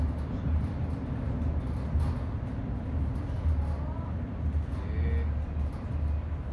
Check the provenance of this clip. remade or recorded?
recorded